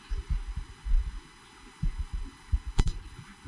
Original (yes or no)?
yes